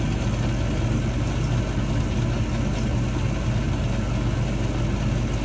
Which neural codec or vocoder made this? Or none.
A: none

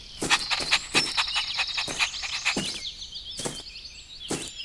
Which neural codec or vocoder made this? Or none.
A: none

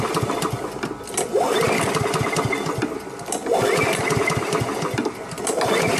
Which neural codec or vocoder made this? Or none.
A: none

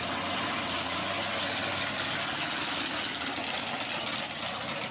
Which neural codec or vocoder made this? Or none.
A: none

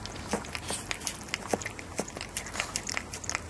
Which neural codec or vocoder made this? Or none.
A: none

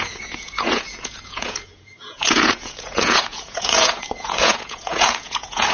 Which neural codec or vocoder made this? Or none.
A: vocoder, Vocos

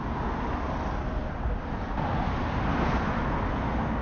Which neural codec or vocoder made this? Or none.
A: none